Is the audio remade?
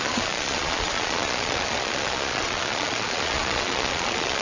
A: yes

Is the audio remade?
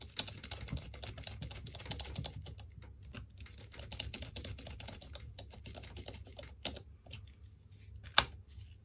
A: no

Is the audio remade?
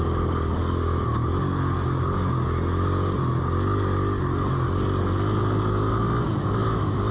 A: no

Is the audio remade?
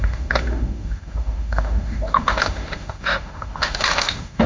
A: yes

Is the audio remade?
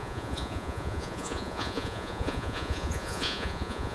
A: yes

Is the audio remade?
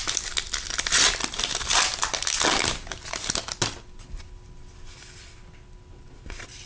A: no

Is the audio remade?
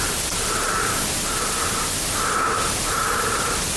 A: yes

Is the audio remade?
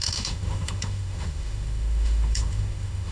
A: yes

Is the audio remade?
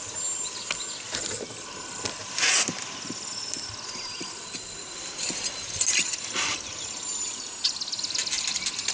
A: no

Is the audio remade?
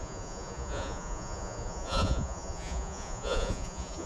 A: yes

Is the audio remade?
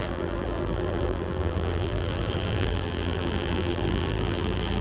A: yes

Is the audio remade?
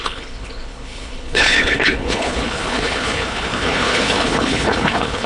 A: yes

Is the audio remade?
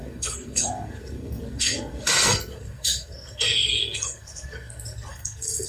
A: yes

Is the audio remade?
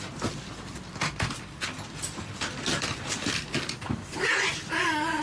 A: no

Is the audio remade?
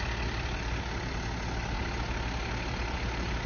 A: no